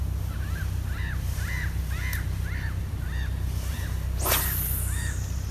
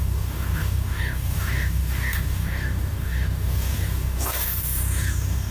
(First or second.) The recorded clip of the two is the first